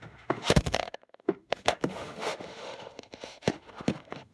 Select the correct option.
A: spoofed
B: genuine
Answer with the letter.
A